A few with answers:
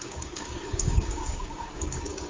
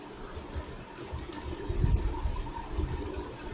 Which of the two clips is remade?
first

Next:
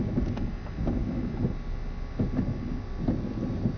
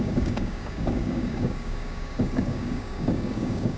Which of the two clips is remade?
second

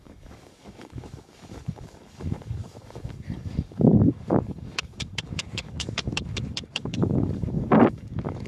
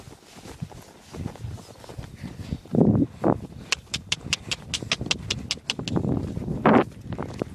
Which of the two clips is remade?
first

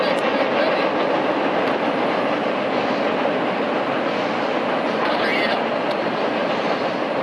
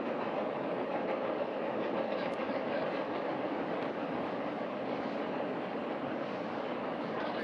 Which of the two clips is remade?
second